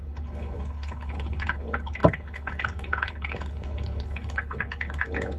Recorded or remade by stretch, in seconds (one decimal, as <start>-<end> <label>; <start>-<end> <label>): 0.0-5.4 remade